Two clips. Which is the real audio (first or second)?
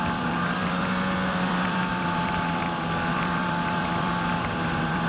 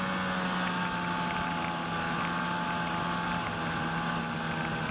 second